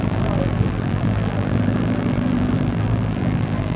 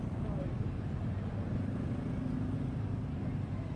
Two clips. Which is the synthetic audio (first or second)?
first